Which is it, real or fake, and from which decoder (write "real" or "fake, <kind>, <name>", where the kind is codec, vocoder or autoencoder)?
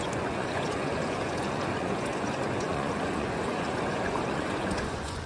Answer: fake, vocoder, Vocos